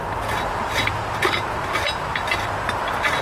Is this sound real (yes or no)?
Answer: yes